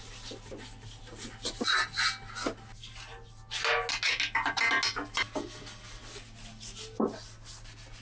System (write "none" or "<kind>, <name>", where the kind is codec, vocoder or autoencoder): none